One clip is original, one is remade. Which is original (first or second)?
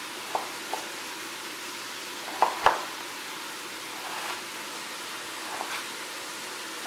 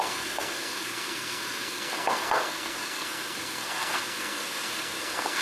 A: first